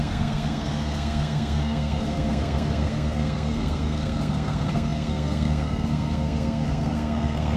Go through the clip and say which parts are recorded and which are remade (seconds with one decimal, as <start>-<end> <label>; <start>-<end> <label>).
0.0-7.6 remade